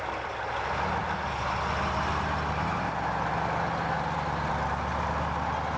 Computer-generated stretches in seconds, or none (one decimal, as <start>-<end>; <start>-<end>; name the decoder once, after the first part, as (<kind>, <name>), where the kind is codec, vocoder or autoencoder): none